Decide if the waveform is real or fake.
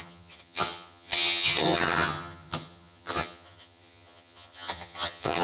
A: fake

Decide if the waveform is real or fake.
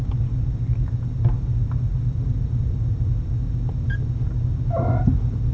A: real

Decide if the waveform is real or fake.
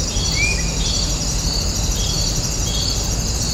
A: real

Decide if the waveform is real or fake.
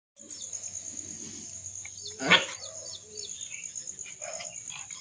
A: real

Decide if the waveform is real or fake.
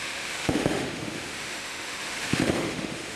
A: fake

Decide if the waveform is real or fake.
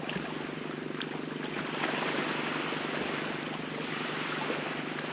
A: real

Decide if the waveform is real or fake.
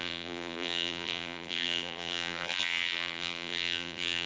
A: fake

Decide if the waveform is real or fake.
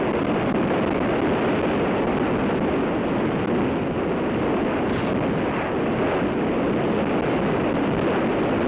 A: real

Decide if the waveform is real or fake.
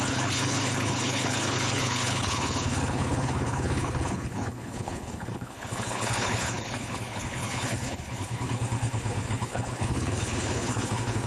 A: fake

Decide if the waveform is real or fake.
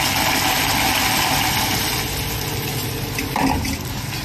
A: real